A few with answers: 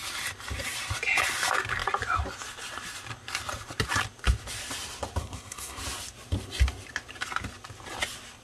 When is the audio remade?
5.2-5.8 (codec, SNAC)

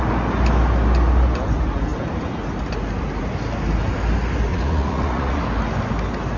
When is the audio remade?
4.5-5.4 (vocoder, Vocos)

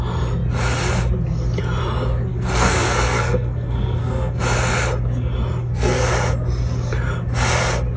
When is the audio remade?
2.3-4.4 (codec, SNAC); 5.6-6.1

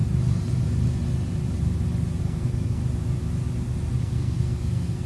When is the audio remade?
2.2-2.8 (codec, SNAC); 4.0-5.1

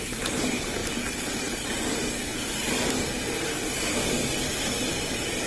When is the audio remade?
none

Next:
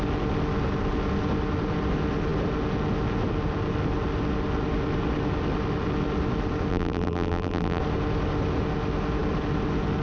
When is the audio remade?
6.7-7.8 (vocoder, BigVGAN v2)